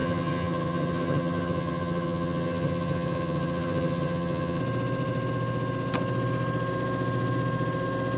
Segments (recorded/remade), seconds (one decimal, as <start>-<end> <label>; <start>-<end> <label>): 0.0-4.6 remade; 4.6-8.2 recorded